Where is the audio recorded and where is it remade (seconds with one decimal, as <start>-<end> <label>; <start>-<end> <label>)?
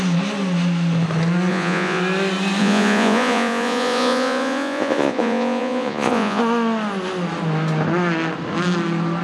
0.0-1.5 recorded; 1.5-2.0 remade; 2.0-2.6 recorded; 2.6-6.4 remade; 6.4-9.2 recorded